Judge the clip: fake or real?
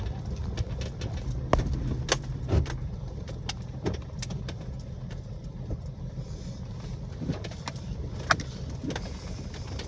real